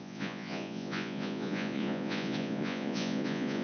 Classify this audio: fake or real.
fake